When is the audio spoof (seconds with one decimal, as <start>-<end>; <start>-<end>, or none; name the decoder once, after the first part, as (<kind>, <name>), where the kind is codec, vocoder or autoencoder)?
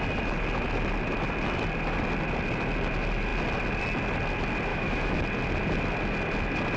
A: 4.7-5.2 (autoencoder, DAC-VAE)